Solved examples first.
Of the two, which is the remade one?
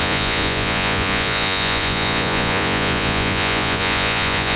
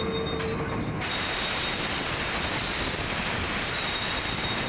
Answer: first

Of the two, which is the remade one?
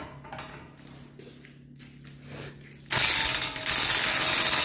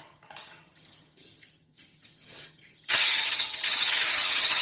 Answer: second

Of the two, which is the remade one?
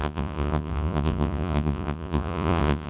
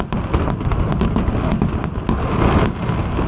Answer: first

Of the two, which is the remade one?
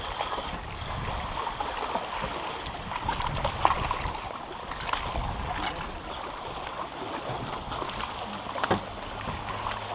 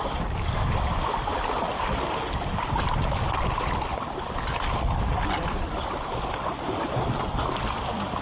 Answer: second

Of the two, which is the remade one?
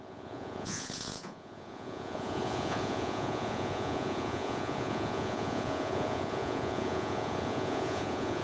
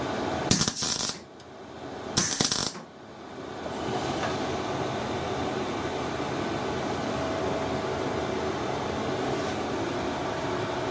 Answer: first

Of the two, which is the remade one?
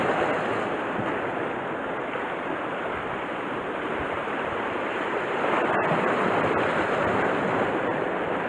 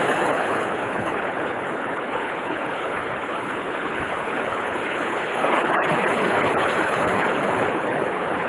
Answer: second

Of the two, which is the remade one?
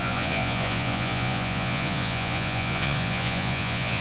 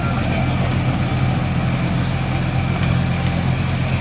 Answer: first